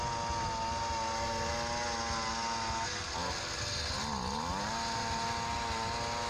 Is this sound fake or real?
real